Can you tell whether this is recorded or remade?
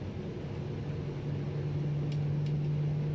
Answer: recorded